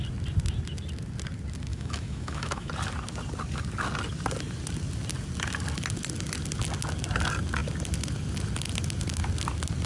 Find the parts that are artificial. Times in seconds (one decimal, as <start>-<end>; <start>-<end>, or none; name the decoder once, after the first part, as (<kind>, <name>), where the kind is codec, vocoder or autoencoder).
1.7-2.7 (autoencoder, DAC-VAE)